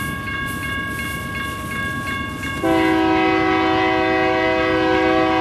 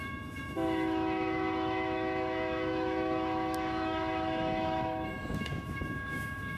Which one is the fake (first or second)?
second